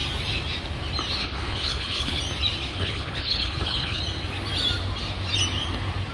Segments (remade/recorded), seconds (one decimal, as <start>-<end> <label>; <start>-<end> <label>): 0.0-1.2 recorded; 1.2-2.2 remade; 2.2-2.7 recorded; 2.7-4.0 remade; 4.0-6.1 recorded